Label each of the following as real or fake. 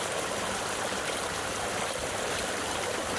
fake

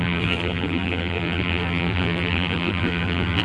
fake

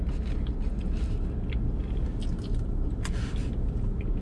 real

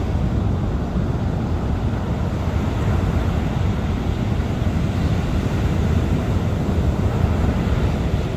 real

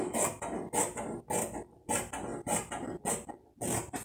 real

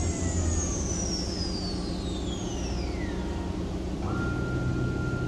real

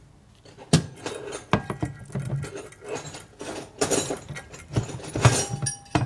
real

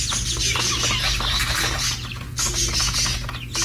real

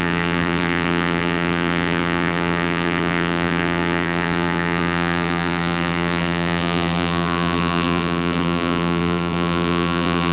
fake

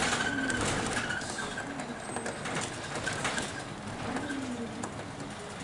real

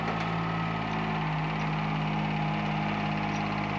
real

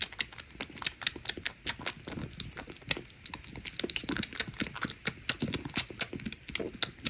real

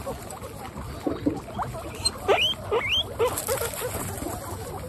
real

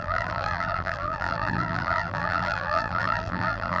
fake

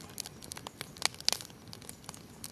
real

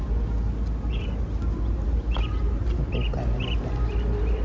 real